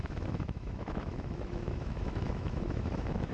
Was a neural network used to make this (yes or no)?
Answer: yes